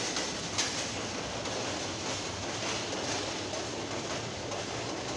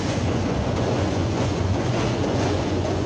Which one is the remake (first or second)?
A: second